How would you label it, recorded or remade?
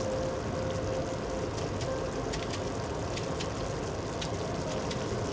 recorded